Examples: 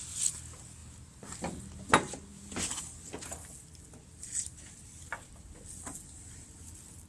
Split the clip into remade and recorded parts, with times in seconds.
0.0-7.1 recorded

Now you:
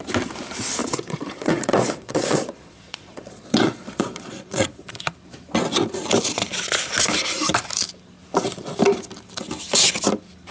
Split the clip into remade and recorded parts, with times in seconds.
0.0-0.8 recorded; 0.8-5.0 remade; 5.0-10.5 recorded